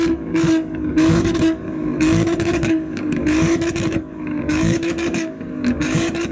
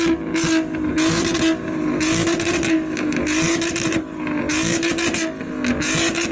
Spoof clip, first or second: first